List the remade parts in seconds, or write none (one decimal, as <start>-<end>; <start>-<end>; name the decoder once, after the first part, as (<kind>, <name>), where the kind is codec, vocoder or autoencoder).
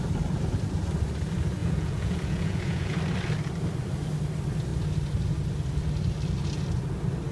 1.6-3.0 (vocoder, Vocos)